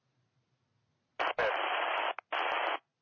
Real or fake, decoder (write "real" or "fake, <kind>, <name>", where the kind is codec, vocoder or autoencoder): real